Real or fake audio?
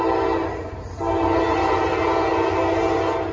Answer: real